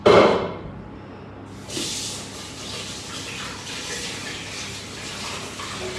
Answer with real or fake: real